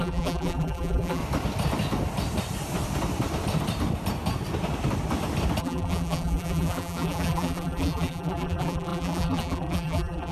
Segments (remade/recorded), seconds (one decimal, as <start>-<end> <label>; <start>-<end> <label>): 0.0-1.2 remade; 1.2-5.6 recorded; 5.6-10.3 remade